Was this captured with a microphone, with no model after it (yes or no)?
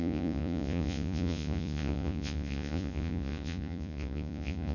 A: no